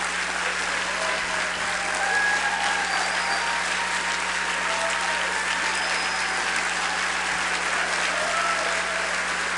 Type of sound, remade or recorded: recorded